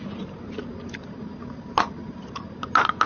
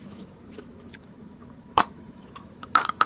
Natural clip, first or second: first